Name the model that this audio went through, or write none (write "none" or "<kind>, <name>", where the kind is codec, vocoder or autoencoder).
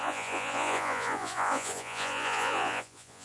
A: vocoder, Vocos